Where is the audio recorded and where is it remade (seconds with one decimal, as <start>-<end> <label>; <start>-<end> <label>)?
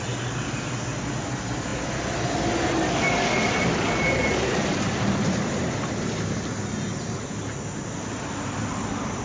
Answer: 0.0-9.2 recorded